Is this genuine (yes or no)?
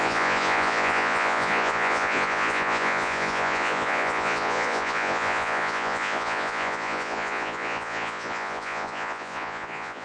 no